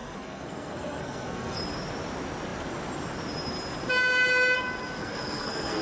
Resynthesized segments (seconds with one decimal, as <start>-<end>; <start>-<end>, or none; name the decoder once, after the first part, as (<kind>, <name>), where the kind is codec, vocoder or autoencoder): 0.0-1.6 (codec, SNAC); 5.0-5.8